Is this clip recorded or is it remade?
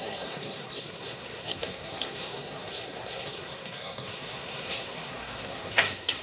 remade